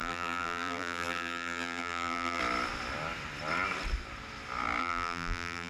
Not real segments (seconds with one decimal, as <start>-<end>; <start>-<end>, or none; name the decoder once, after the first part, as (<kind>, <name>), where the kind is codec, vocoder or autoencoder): 0.0-2.4 (vocoder, BigVGAN v2); 4.8-5.7